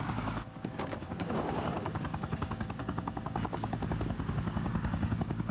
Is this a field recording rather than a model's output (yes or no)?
no